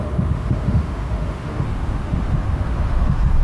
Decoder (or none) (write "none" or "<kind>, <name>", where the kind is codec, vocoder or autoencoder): autoencoder, DAC-VAE